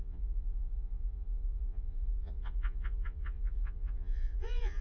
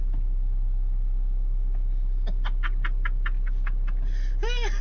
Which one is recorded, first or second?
second